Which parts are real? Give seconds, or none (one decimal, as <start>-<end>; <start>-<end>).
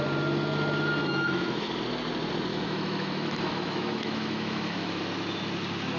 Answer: 0.0-1.0; 1.7-2.5; 5.0-6.0